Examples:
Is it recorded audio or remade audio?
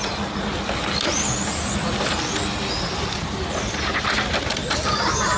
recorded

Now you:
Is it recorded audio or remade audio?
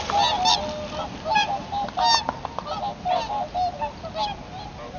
recorded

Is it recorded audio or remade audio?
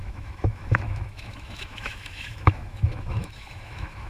remade